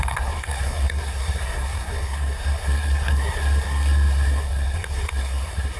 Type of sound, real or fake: fake